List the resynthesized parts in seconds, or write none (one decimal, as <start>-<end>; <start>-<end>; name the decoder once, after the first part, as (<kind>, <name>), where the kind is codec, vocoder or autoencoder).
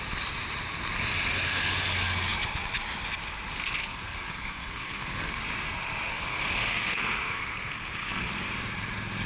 3.8-5.4 (codec, SNAC); 6.1-8.3